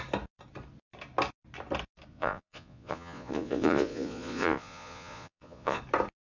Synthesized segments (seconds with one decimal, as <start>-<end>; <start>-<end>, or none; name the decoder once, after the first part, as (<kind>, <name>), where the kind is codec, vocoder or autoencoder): 2.1-5.8 (vocoder, Vocos)